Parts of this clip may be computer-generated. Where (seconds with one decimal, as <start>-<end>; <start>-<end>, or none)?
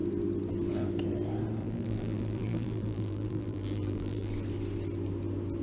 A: 1.6-4.3